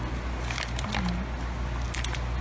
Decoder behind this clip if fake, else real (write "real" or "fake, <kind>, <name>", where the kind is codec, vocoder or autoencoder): real